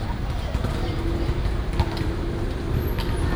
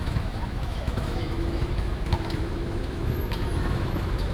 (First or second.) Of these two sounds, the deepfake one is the second